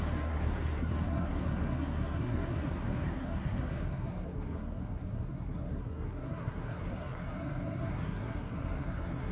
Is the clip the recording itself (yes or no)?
no